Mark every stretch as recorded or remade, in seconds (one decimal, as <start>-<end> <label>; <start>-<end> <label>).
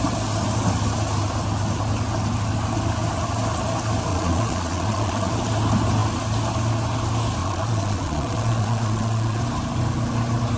0.0-4.1 recorded; 4.1-5.3 remade; 5.3-7.4 recorded; 7.4-9.4 remade; 9.4-10.6 recorded